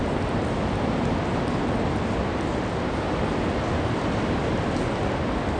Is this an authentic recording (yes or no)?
yes